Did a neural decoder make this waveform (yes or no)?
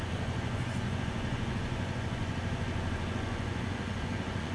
yes